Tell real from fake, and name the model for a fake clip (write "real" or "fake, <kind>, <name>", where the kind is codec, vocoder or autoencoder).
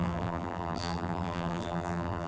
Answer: fake, vocoder, BigVGAN v2